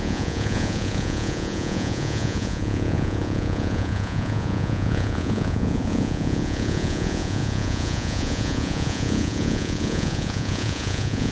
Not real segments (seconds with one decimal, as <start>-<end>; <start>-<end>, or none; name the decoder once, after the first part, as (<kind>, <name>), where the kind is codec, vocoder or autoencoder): 0.0-11.3 (vocoder, Vocos)